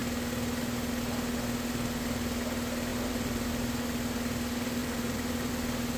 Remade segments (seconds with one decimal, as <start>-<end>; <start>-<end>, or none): 2.9-3.5; 4.8-5.5